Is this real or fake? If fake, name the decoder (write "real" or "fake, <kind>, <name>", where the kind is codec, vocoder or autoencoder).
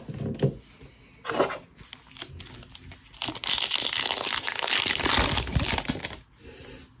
real